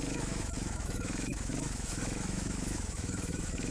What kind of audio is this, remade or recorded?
remade